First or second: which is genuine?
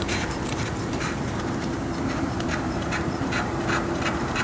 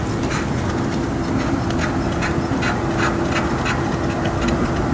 second